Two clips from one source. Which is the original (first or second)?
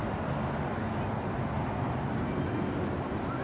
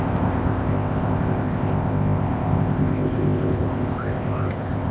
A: first